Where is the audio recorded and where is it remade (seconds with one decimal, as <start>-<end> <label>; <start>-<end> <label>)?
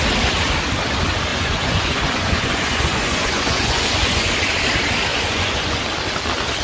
0.0-1.3 recorded; 1.3-4.3 remade; 4.3-5.1 recorded; 5.1-5.8 remade; 5.8-6.6 recorded